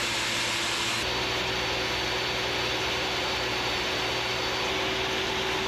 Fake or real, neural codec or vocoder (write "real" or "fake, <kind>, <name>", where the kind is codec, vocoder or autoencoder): real